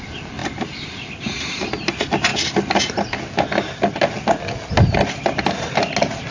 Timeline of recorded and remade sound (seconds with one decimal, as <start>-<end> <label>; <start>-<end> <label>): 0.0-6.3 recorded